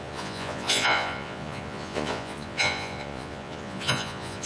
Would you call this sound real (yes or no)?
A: no